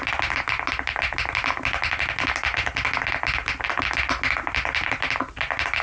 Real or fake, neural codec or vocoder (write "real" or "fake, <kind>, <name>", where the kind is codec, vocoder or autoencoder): real